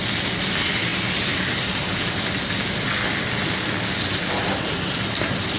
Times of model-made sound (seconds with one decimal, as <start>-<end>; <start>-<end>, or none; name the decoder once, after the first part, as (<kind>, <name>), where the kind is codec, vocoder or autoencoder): none